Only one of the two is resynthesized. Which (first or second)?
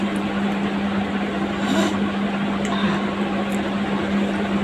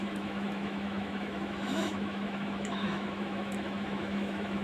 second